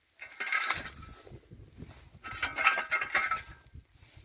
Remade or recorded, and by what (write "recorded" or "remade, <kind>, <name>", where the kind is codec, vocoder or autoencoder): recorded